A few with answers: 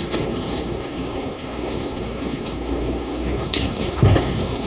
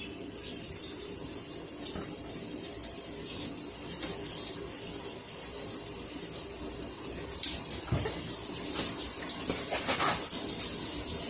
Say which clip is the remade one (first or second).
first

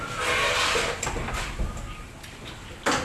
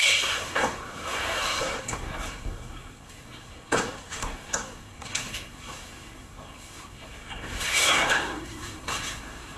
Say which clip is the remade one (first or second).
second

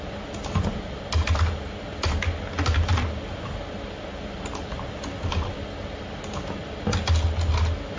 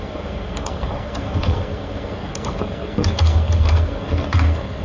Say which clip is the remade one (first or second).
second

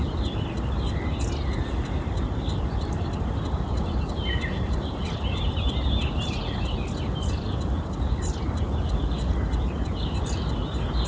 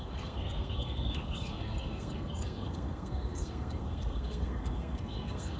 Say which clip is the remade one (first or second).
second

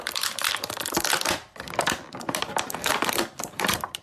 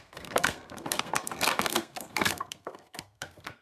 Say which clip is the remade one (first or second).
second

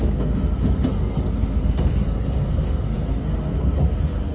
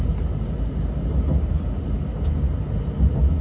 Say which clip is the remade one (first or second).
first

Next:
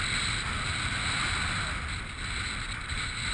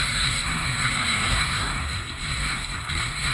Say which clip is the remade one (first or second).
second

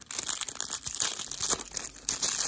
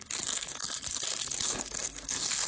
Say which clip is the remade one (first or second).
second